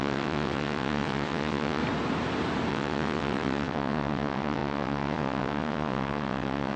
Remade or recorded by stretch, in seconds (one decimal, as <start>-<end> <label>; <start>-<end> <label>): 0.0-1.8 remade; 1.8-2.7 recorded; 2.7-6.8 remade